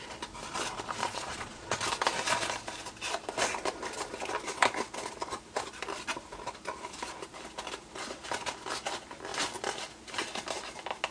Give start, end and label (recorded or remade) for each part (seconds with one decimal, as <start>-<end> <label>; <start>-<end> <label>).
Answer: 0.0-1.0 recorded; 1.0-1.8 remade; 1.8-11.1 recorded